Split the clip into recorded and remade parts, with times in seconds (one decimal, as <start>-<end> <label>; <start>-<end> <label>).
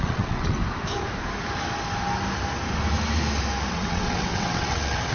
0.0-0.6 remade; 0.6-3.7 recorded; 3.7-5.1 remade